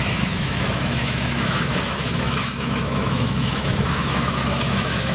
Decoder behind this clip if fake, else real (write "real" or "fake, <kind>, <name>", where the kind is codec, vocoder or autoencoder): fake, autoencoder, DAC-VAE